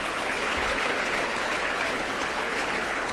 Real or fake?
fake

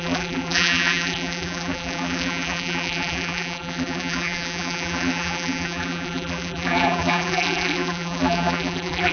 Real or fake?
fake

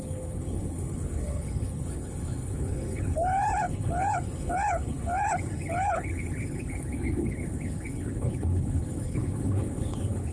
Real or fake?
fake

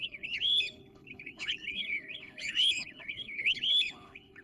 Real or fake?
fake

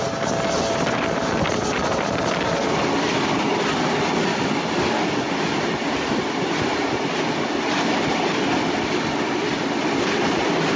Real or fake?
real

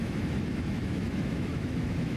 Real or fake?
fake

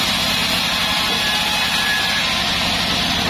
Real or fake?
real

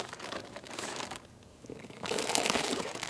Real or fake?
fake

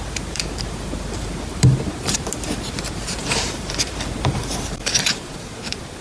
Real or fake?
fake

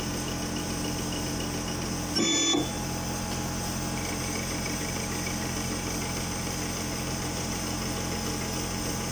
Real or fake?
real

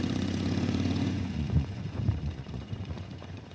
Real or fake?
fake